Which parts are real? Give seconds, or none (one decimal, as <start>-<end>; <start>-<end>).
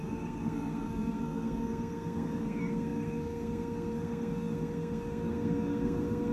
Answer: none